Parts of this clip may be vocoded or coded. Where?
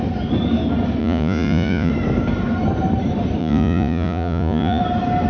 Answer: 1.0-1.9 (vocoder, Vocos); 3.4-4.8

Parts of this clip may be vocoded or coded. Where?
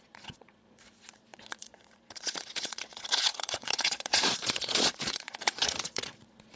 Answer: 0.0-6.6 (vocoder, Vocos)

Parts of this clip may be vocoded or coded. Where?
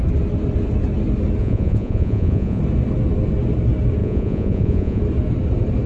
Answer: 1.4-2.6 (vocoder, Vocos); 4.0-5.0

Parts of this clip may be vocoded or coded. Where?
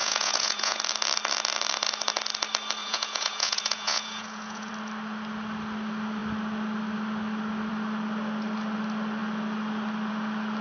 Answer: 0.0-0.8 (vocoder, Vocos); 2.8-4.7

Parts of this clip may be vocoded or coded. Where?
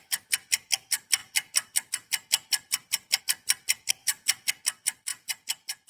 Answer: 4.0-4.5 (vocoder, Vocos); 5.1-5.9